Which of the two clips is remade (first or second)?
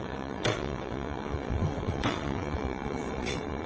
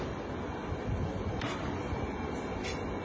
first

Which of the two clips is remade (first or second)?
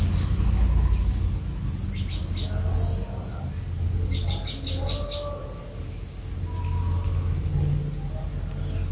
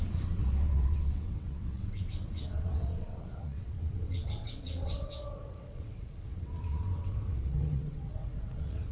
second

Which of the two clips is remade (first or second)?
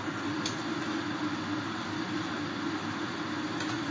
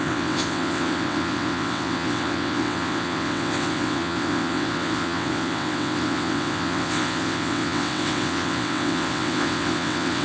second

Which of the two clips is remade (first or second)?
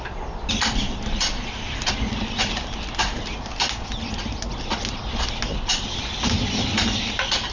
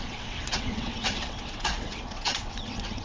second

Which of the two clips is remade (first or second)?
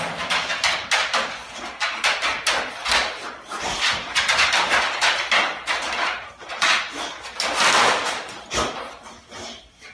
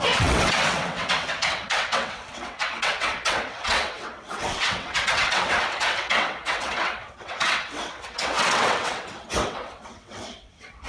second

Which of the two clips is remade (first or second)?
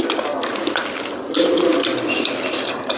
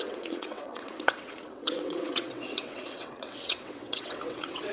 second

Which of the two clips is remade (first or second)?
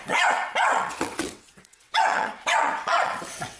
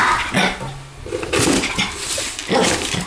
first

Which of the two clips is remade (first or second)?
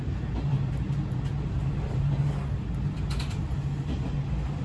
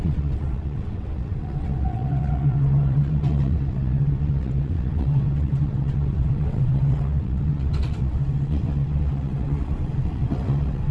second